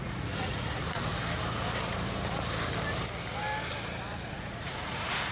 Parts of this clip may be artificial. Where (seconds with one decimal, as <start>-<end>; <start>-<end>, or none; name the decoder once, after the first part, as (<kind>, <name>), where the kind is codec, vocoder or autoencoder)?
0.0-1.1 (vocoder, Vocos); 4.3-5.3